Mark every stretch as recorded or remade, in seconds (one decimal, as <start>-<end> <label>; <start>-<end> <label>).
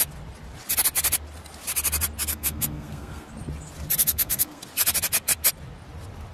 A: 0.0-2.3 recorded; 2.3-3.3 remade; 3.3-4.0 recorded; 4.0-4.6 remade; 4.6-6.3 recorded